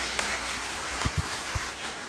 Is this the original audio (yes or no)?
no